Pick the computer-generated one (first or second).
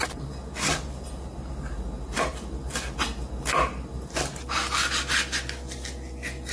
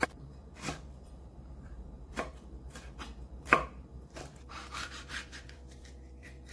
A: second